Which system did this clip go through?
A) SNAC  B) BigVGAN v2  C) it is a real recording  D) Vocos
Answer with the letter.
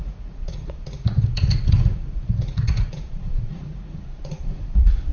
D